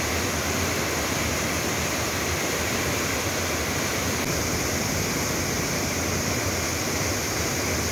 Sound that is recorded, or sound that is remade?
recorded